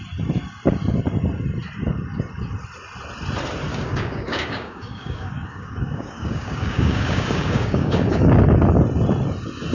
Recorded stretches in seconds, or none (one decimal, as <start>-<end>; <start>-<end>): 0.0-3.7; 8.4-9.7